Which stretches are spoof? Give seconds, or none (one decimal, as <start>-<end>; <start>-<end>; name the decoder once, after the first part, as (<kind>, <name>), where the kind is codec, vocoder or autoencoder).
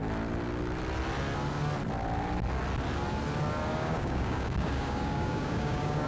3.7-6.1 (codec, DAC)